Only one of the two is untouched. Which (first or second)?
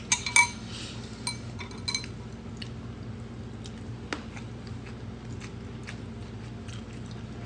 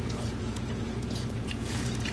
first